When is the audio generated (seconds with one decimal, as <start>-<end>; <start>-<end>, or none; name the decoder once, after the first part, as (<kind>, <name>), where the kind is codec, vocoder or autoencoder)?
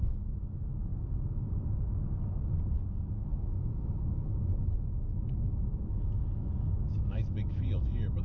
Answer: 0.9-1.6 (autoencoder, DAC-VAE); 3.3-8.2